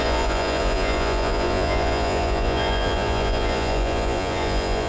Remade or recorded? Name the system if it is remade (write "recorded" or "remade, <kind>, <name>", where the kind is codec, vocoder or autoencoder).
remade, vocoder, Vocos